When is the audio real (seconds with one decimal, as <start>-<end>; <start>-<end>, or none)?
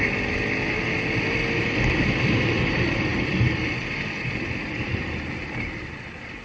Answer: 0.0-6.4